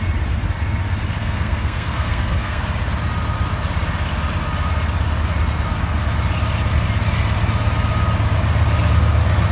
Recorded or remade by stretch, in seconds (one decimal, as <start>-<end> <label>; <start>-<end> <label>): 0.0-1.2 recorded; 1.2-2.6 remade; 2.6-9.5 recorded